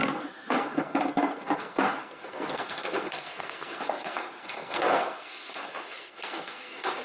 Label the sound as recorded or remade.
remade